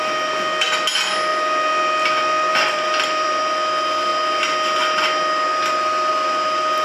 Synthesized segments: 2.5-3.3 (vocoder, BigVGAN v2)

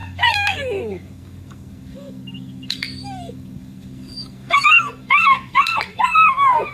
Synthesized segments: 0.0-6.7 (codec, SNAC)

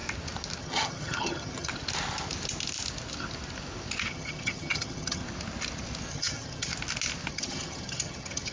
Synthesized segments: 0.6-1.7 (vocoder, HiFi-GAN); 4.1-5.2; 6.1-6.7; 7.3-8.5

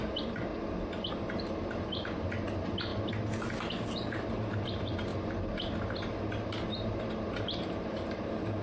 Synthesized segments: 0.0-0.5 (vocoder, BigVGAN v2); 1.1-2.9; 3.6-8.6

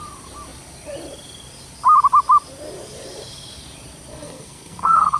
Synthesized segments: 4.1-5.2 (codec, SNAC)

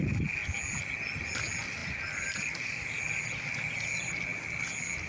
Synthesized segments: 1.8-3.7 (vocoder, BigVGAN v2)

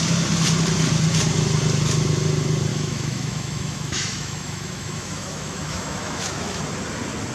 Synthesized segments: 2.7-6.6 (autoencoder, DAC-VAE)